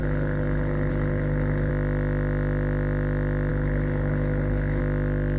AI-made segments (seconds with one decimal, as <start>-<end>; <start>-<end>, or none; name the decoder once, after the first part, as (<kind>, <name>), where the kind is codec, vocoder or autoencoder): 0.0-1.7 (codec, HILCodec); 3.5-4.8